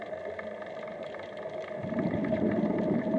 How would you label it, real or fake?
real